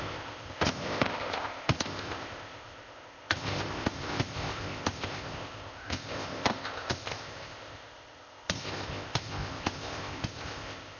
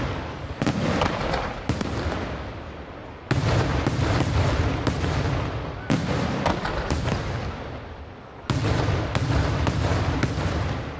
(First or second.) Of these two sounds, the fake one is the first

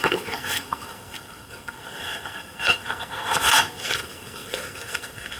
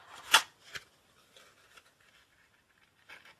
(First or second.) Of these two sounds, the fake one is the first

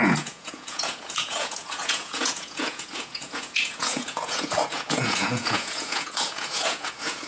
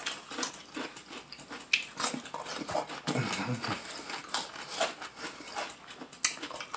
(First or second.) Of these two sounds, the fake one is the first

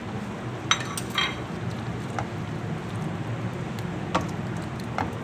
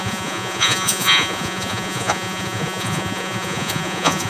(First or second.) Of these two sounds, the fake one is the second